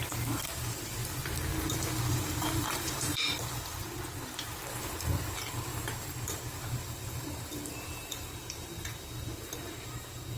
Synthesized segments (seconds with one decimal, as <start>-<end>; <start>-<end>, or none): 0.0-1.0; 2.1-3.7; 4.8-5.7; 6.4-10.4